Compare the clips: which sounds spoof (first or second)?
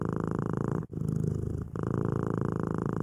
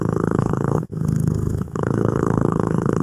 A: second